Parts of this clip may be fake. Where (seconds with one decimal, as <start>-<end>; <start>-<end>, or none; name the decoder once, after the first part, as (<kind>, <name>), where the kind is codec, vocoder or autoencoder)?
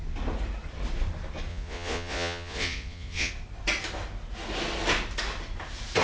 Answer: 1.5-3.3 (vocoder, Vocos)